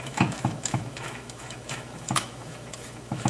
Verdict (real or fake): fake